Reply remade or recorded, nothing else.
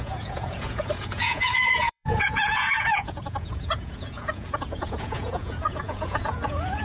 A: remade